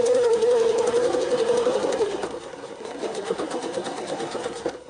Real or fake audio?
fake